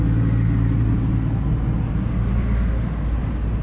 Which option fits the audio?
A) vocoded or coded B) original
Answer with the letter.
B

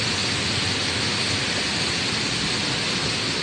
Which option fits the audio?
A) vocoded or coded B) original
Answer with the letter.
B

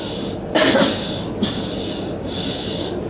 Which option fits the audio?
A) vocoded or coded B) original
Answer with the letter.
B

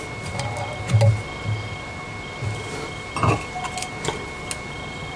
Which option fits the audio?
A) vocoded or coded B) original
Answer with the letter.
B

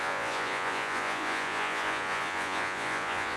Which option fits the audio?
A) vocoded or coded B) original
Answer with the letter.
A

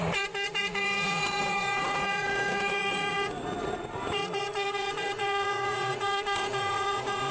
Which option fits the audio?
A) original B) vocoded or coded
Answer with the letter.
B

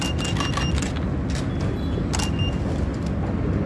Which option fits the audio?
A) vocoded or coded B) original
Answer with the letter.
B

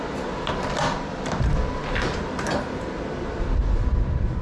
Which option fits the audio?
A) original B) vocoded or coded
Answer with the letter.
A